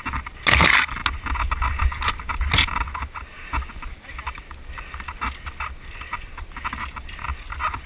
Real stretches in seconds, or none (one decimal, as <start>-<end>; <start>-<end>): 0.0-7.9